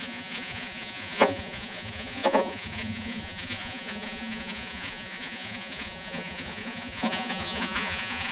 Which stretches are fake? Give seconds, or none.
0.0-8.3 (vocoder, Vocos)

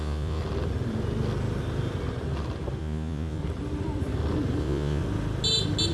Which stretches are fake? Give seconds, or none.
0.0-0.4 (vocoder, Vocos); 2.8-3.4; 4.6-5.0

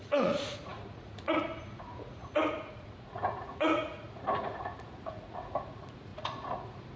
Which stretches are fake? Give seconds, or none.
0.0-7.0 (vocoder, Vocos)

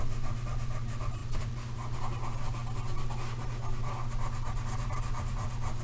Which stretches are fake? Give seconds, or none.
none

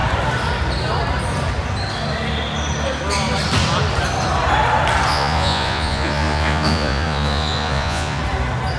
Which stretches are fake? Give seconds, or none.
5.1-8.2 (vocoder, Vocos)

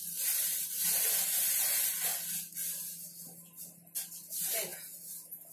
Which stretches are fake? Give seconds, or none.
4.7-5.5 (vocoder, Vocos)